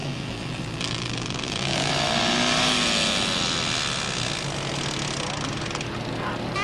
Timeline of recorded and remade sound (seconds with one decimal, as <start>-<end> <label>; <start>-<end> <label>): 0.0-1.9 remade; 1.9-6.6 recorded